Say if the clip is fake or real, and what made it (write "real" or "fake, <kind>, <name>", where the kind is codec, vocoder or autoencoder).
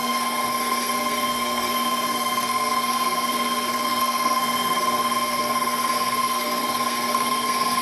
fake, codec, SNAC